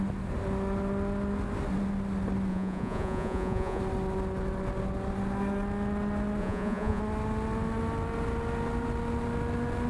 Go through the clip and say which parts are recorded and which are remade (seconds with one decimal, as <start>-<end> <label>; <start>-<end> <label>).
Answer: 0.0-2.5 recorded; 2.5-3.8 remade; 3.8-6.4 recorded; 6.4-7.0 remade; 7.0-9.9 recorded